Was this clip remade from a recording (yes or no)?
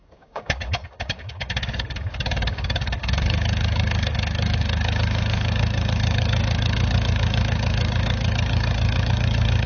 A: yes